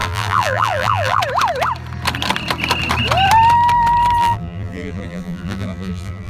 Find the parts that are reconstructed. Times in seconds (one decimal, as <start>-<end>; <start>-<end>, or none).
0.0-1.2; 4.2-6.3